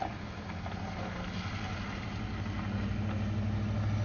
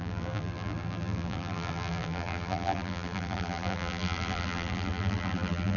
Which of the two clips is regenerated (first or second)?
second